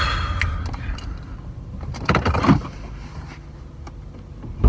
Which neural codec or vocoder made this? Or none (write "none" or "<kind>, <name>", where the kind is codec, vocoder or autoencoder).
none